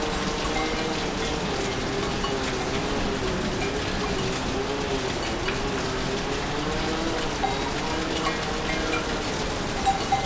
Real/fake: real